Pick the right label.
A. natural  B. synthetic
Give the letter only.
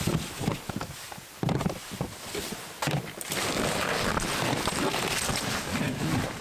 B